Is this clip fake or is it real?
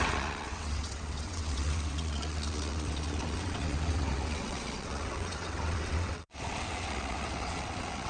fake